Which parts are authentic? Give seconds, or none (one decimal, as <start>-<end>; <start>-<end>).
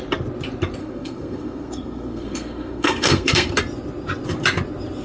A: 0.0-0.8; 3.5-5.0